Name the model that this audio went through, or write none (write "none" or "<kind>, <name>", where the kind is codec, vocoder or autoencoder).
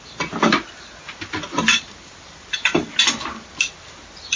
none